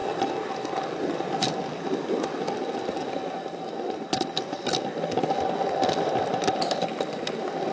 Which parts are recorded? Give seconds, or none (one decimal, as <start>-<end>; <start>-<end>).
0.0-7.7